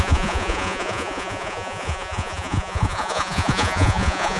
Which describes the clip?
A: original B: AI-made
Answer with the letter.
B